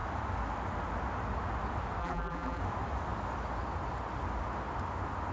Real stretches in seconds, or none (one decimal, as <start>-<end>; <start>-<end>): 0.0-2.0; 2.6-5.3